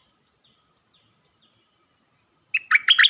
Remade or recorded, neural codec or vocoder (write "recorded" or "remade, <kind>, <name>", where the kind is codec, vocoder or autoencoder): recorded